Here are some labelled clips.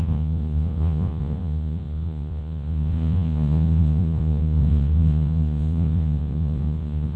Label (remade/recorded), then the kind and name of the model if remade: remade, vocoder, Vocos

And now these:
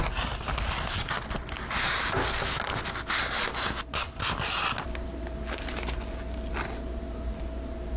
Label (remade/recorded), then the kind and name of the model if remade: recorded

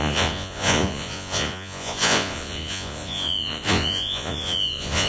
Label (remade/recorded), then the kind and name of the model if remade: remade, vocoder, Vocos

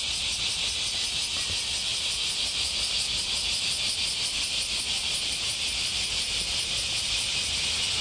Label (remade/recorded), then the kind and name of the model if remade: recorded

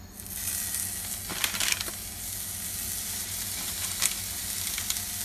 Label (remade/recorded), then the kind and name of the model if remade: recorded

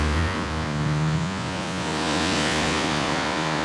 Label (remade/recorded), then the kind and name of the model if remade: remade, vocoder, Vocos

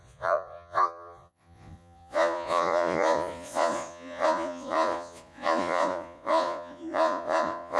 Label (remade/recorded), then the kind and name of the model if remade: remade, vocoder, Vocos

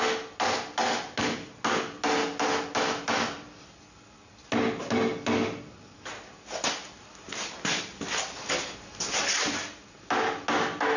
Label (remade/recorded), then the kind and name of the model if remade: recorded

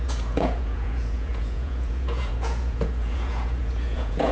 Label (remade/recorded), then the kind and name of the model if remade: remade, vocoder, Vocos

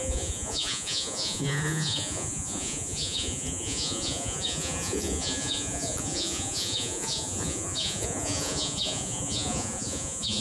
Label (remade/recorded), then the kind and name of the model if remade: remade, vocoder, Vocos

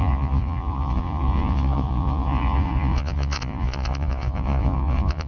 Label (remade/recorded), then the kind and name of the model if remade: remade, vocoder, Vocos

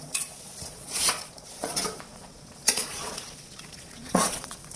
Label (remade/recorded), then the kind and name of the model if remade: remade, vocoder, Vocos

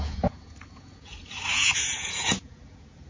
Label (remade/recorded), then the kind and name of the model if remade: remade, vocoder, Vocos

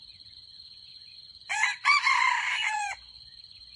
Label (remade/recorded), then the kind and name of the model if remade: remade, vocoder, Vocos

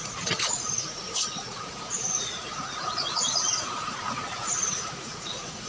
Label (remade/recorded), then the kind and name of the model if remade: remade, vocoder, Vocos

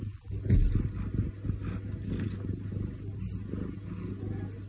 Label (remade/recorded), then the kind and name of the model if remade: recorded